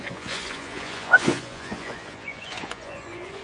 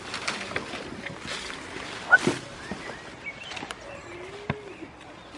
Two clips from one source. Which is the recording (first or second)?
second